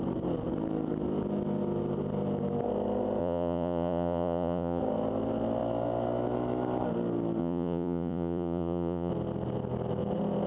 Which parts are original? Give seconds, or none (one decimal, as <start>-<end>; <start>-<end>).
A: 0.0-3.2; 4.8-7.4; 9.1-10.5